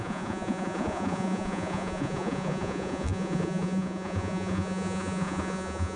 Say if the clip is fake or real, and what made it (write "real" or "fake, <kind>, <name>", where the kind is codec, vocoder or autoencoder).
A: fake, vocoder, Vocos